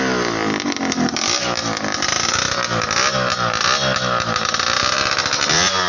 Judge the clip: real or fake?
real